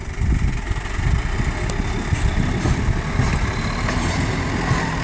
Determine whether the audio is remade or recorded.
recorded